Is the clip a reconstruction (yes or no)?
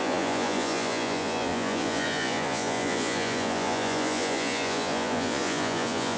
yes